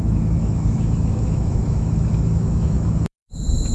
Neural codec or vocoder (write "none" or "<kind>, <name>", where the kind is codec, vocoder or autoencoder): autoencoder, DAC-VAE